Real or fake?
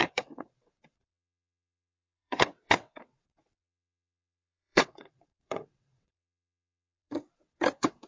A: fake